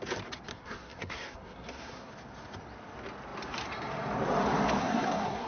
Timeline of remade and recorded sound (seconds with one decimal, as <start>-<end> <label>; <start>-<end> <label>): 0.0-0.5 recorded; 0.5-2.1 remade; 2.1-4.8 recorded; 4.8-5.5 remade